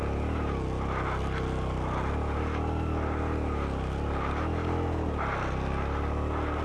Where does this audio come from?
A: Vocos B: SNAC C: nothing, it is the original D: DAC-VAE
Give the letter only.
C